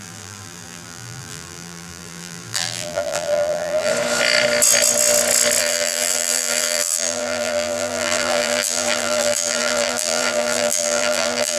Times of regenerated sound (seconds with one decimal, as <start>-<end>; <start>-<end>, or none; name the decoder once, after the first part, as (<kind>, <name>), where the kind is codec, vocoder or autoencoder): 0.0-3.9 (vocoder, BigVGAN v2); 5.6-11.6